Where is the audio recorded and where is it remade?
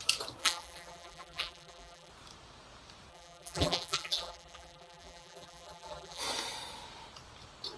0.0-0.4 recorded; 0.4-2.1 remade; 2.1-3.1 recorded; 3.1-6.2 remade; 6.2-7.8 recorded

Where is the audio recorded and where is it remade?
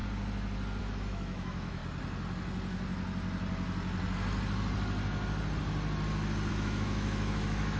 0.0-0.8 recorded; 0.8-1.8 remade; 1.8-6.5 recorded; 6.5-7.8 remade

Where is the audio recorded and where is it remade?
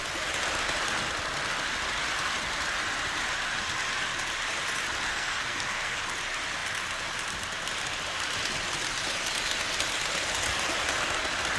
0.0-5.1 recorded; 5.1-6.0 remade; 6.0-11.6 recorded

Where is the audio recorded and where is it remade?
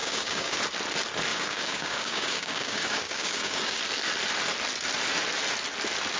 0.0-0.6 remade; 0.6-1.3 recorded; 1.3-3.8 remade; 3.8-6.2 recorded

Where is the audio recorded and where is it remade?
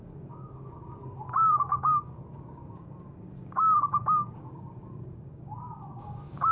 0.0-6.5 remade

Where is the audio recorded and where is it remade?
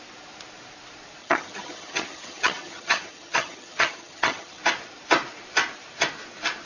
0.0-1.2 recorded; 1.2-4.6 remade; 4.6-6.7 recorded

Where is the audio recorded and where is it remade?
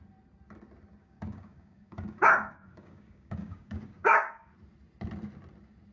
0.0-1.0 recorded; 1.0-4.5 remade; 4.5-5.9 recorded